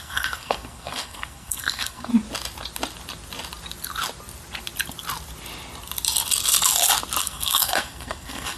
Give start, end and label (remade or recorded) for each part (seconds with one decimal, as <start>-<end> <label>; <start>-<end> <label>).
0.0-2.1 remade; 2.1-7.2 recorded; 7.2-8.6 remade